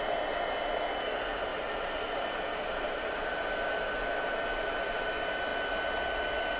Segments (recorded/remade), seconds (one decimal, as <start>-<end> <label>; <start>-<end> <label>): 0.0-1.5 recorded; 1.5-3.2 remade; 3.2-4.5 recorded; 4.5-5.1 remade; 5.1-6.6 recorded